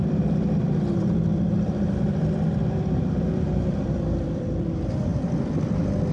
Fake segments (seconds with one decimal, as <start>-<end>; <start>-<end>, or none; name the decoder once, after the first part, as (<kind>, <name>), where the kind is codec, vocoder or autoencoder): 0.0-5.1 (vocoder, BigVGAN v2)